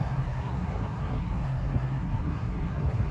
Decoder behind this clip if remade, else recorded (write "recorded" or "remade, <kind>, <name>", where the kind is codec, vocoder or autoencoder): remade, codec, SNAC